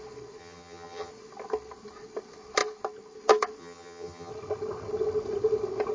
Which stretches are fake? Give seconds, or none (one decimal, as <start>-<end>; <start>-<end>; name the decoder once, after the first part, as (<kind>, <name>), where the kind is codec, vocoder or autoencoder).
0.4-1.1 (vocoder, HiFi-GAN); 3.6-4.3